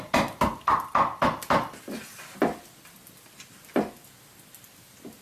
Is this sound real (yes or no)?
yes